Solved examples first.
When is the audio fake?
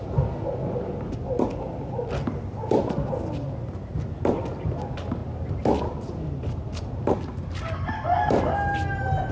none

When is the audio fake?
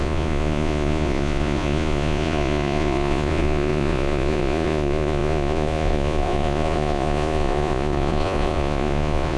0.0-9.4 (vocoder, Vocos)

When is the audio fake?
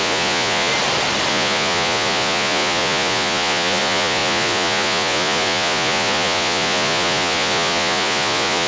0.0-0.7 (vocoder, Vocos); 1.3-8.7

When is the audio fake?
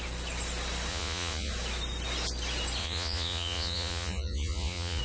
0.9-1.5 (vocoder, Vocos); 2.8-5.0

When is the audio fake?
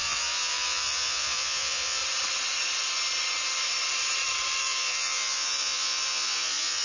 0.0-2.0 (vocoder, Vocos); 4.6-6.8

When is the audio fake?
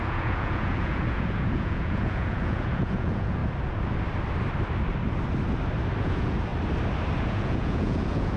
0.0-3.4 (vocoder, Vocos); 6.0-6.5; 7.2-8.4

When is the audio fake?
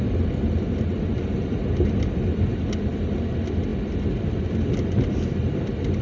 none